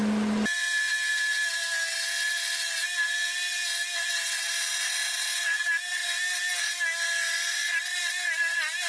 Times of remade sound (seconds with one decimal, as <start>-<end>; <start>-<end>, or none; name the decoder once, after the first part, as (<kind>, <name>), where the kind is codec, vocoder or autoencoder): none